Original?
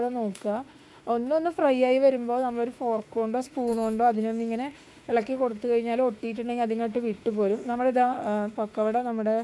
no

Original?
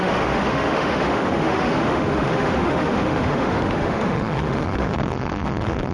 no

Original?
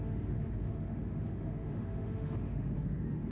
no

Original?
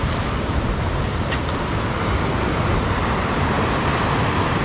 yes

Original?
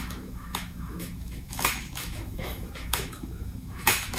no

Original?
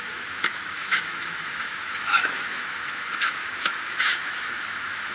no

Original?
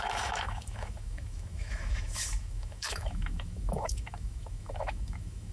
no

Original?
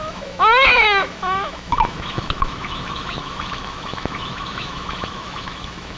no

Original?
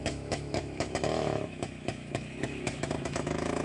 no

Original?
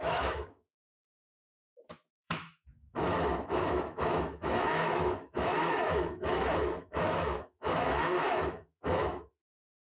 no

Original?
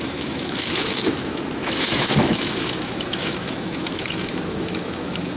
no